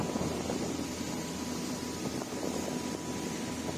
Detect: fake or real real